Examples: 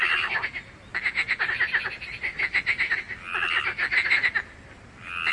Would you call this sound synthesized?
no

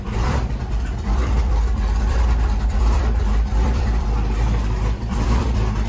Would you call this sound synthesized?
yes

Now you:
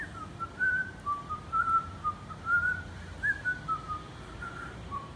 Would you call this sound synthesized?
yes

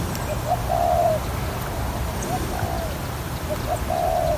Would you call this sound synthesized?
no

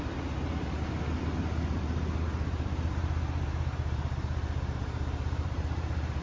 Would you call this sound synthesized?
yes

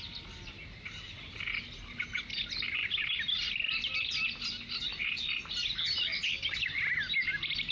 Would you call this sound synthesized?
no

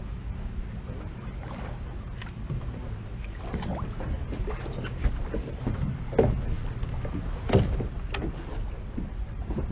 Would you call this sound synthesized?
no